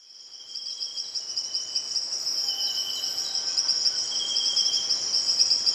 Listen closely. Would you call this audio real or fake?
real